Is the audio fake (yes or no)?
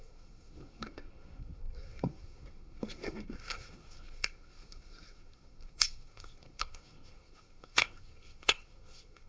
yes